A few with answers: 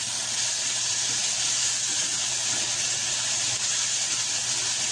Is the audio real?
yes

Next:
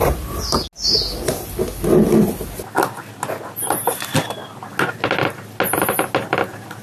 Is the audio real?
yes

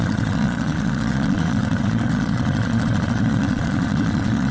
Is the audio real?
no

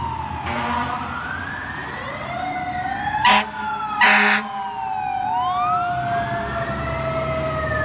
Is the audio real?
yes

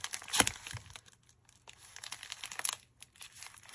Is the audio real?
yes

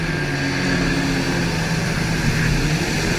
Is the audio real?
yes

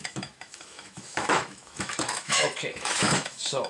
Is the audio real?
no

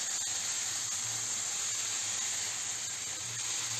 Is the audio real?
yes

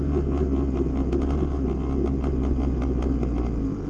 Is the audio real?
yes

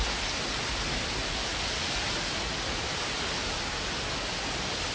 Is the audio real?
yes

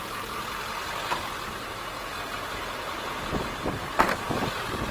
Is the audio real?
yes